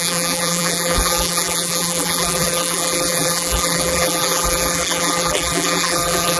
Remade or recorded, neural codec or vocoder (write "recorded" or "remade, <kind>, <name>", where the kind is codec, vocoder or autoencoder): remade, vocoder, BigVGAN v2